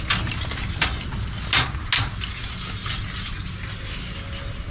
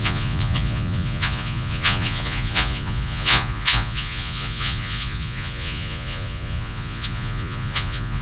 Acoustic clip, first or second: first